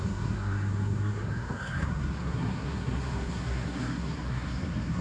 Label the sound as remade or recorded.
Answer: remade